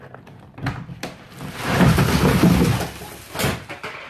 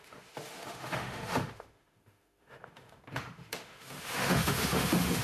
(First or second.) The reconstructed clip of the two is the second